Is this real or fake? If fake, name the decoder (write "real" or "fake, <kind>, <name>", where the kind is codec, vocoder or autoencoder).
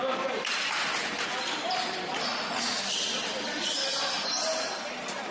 real